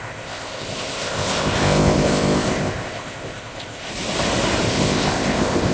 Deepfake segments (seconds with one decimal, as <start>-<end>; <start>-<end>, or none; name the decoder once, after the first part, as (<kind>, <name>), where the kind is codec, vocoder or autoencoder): 0.0-3.9 (codec, ZipCodec); 4.7-5.7